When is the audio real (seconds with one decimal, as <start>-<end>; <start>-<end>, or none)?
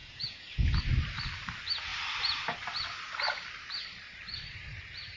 0.8-5.2